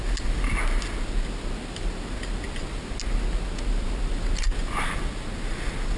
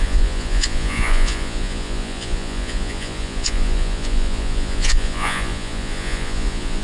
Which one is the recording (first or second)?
first